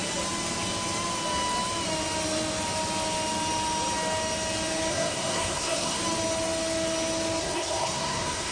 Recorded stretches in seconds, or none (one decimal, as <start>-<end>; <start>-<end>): 0.0-4.9; 6.0-7.4